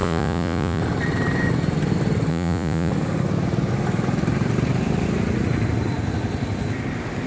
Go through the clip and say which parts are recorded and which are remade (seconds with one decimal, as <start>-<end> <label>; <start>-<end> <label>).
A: 0.0-0.8 remade; 0.8-2.3 recorded; 2.3-2.9 remade; 2.9-7.3 recorded